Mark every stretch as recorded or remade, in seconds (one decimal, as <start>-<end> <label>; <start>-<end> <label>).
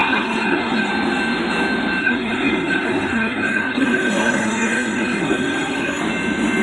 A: 0.0-0.9 remade; 0.9-2.0 recorded; 2.0-6.0 remade; 6.0-6.6 recorded